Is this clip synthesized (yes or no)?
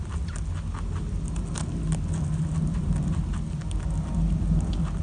no